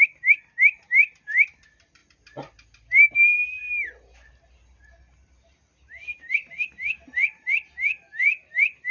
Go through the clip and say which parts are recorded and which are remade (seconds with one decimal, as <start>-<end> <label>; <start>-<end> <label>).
0.0-8.9 recorded

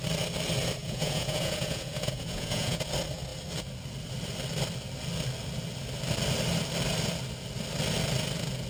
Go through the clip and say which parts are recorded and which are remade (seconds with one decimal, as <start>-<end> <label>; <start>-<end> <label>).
0.0-0.8 recorded; 0.8-2.8 remade; 2.8-8.7 recorded